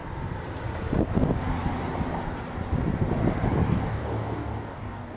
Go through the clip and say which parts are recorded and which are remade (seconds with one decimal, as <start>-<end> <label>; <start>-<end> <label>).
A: 0.0-3.7 recorded; 3.7-5.2 remade